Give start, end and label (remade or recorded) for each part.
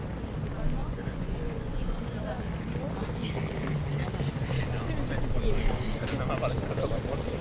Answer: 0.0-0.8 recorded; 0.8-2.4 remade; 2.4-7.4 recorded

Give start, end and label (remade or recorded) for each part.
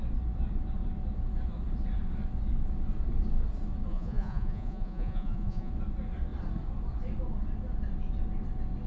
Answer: 0.0-3.9 recorded; 3.9-5.7 remade; 5.7-8.9 recorded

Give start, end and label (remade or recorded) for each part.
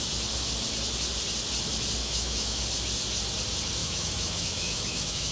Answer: 0.0-2.0 recorded; 2.0-2.6 remade; 2.6-3.8 recorded; 3.8-5.3 remade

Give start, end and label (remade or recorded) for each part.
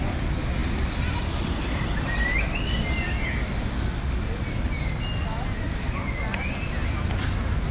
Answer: 0.0-7.7 recorded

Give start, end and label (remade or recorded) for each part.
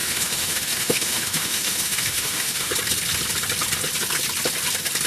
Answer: 0.0-2.7 remade; 2.7-5.1 recorded